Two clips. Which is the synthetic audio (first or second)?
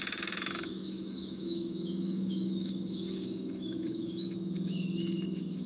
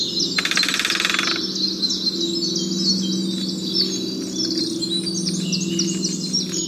first